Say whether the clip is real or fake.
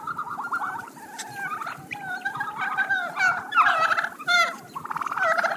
real